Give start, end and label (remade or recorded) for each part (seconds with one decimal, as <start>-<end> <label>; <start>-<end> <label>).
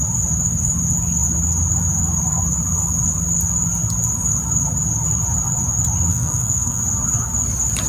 0.0-6.1 recorded; 6.1-6.8 remade; 6.8-7.9 recorded